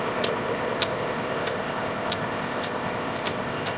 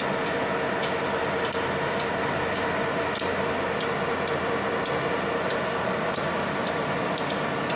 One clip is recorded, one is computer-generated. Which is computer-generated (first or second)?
first